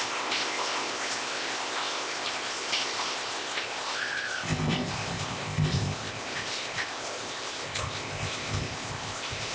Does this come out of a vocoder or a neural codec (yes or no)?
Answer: yes